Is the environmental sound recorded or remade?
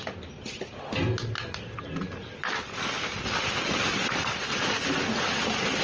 recorded